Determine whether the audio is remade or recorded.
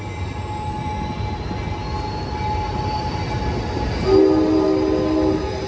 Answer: recorded